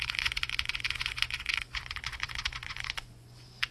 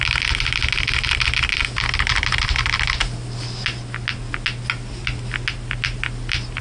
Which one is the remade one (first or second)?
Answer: first